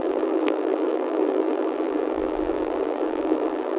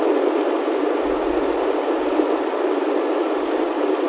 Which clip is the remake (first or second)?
first